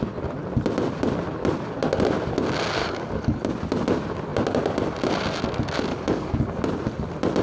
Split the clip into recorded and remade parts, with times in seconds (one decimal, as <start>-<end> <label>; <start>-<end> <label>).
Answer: 0.0-2.8 recorded; 2.8-3.5 remade; 3.5-5.9 recorded; 5.9-6.6 remade; 6.6-7.4 recorded